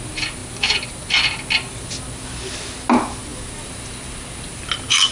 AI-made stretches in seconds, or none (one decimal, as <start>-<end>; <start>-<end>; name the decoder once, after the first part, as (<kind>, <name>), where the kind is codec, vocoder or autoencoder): none